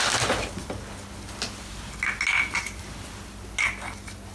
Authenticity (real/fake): real